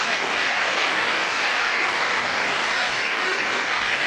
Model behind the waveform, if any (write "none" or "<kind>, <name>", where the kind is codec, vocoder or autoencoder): codec, DAC